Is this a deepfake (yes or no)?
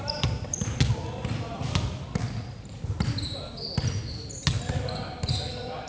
no